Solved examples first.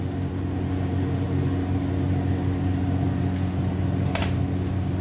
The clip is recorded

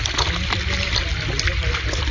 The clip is recorded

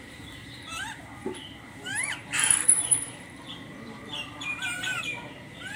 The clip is remade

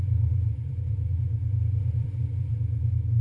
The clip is remade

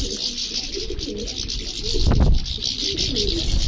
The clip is recorded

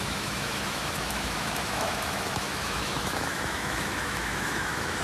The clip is remade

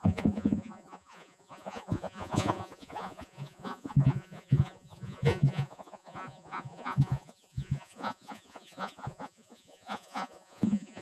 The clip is remade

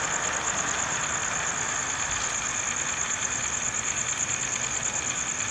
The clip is recorded